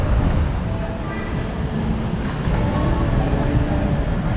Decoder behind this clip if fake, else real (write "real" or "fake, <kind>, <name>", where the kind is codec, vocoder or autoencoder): real